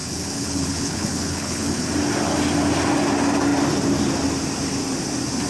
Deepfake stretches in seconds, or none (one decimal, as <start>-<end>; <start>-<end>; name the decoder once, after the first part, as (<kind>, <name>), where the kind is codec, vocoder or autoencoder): 0.0-1.9 (codec, HILCodec)